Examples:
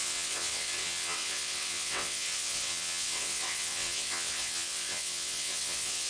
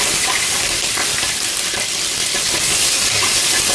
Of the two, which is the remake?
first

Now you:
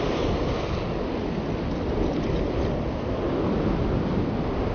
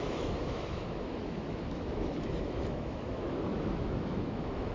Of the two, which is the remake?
second